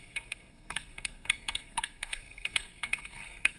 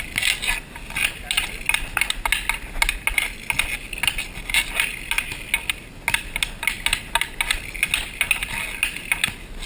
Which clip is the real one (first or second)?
second